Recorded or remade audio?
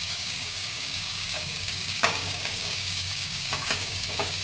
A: remade